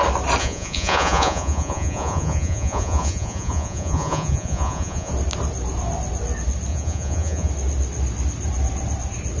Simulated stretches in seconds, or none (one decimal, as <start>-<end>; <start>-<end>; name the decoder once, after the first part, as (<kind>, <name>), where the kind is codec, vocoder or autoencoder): 0.4-5.1 (vocoder, Vocos); 6.7-7.5